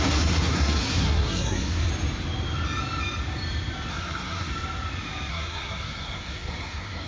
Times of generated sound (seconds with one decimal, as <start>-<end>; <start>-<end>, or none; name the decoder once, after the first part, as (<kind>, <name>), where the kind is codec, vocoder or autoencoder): 0.0-1.9 (codec, SNAC); 3.9-4.5; 5.3-7.1